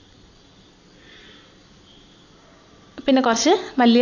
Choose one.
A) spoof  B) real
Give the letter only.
B